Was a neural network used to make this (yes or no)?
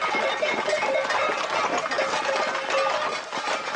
no